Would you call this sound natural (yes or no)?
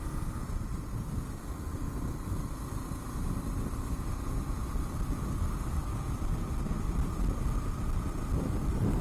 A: yes